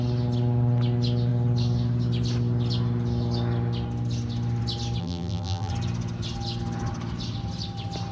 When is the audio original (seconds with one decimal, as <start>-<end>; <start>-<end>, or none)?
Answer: 0.0-5.0; 5.7-8.1